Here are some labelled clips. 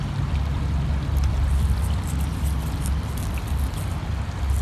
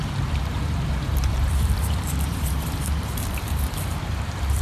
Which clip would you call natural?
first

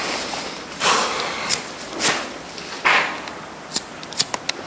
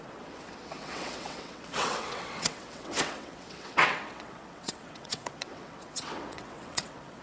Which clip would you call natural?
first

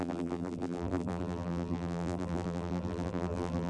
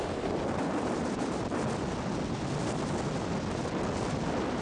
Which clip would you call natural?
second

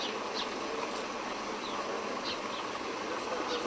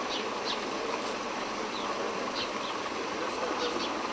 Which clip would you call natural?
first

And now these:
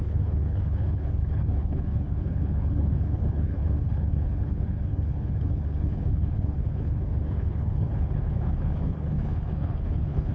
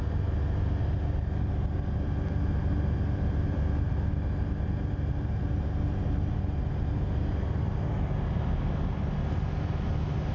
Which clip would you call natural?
second